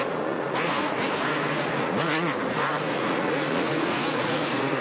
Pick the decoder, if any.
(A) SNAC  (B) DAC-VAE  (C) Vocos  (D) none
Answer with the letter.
C